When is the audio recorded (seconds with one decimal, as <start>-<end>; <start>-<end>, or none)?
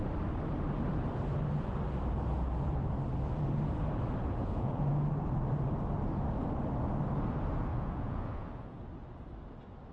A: 0.0-4.2; 4.9-7.7; 8.8-9.9